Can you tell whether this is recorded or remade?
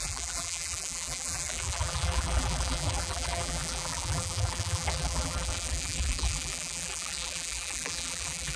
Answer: remade